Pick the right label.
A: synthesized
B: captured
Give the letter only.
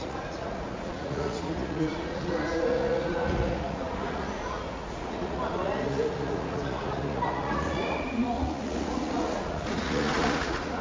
A